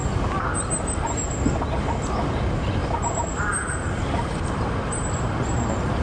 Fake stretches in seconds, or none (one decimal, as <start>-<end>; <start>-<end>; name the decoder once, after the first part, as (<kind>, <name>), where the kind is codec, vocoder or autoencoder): 2.8-5.1 (vocoder, BigVGAN v2)